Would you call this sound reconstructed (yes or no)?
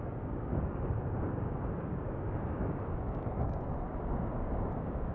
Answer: yes